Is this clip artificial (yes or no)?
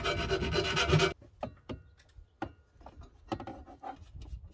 no